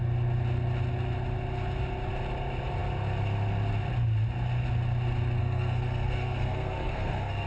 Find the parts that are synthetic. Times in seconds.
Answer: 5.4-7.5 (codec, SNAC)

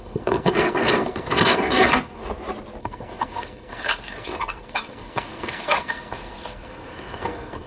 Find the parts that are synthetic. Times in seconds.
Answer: 0.0-2.2 (codec, SNAC); 2.8-7.7

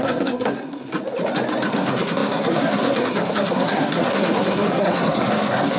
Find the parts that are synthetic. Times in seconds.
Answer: 0.0-0.9 (codec, SNAC); 1.7-5.8

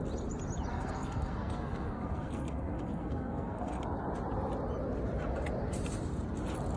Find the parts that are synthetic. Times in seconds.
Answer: 0.7-3.8 (codec, SNAC)